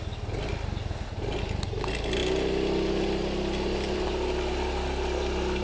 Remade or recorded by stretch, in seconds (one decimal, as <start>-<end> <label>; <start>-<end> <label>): 0.0-5.6 recorded